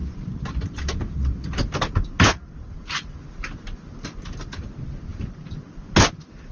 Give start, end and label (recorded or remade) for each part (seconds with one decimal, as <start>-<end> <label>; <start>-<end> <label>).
0.0-6.5 recorded